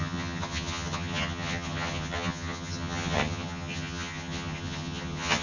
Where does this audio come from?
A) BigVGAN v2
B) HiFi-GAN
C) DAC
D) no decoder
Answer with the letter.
B